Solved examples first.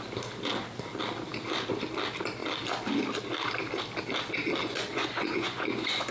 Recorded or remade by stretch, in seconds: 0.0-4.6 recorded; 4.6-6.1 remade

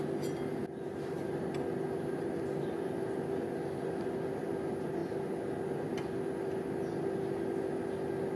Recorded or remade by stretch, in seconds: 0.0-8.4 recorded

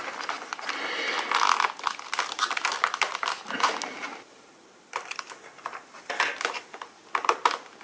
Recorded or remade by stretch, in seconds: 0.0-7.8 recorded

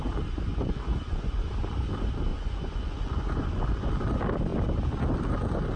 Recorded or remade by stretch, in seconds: 0.0-0.5 recorded; 0.5-1.5 remade; 1.5-2.3 recorded; 2.3-3.9 remade; 3.9-5.8 recorded

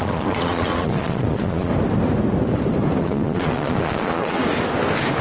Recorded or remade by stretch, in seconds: 0.0-1.7 remade; 1.7-3.0 recorded; 3.0-4.4 remade; 4.4-5.2 recorded

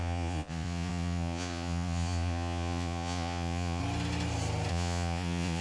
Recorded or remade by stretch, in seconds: 0.0-3.8 remade; 3.8-4.7 recorded; 4.7-5.6 remade